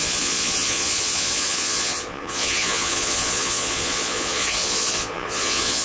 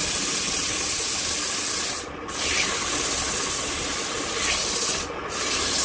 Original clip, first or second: second